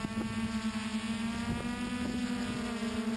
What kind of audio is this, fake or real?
real